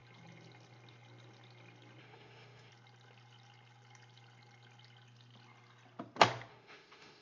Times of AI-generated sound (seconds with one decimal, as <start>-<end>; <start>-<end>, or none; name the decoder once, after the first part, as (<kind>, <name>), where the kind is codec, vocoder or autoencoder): 2.0-2.7 (autoencoder, DAC-VAE); 6.5-7.2